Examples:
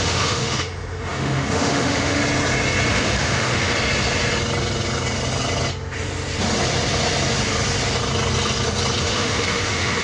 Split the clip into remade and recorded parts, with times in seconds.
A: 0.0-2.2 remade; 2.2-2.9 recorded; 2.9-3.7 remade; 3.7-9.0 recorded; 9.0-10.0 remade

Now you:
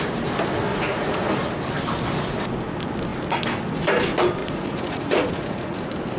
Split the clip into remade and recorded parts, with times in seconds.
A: 0.0-0.7 recorded; 0.7-1.3 remade; 1.3-4.4 recorded; 4.4-5.8 remade; 5.8-6.2 recorded